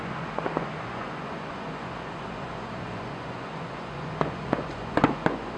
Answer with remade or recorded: remade